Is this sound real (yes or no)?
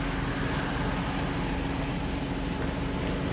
yes